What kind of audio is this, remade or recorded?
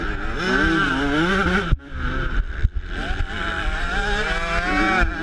recorded